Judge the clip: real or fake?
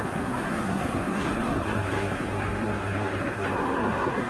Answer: fake